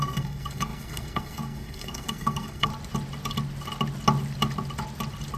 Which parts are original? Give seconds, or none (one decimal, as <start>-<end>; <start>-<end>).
2.7-5.4